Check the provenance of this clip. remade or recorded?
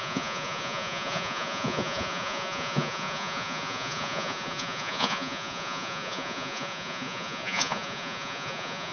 remade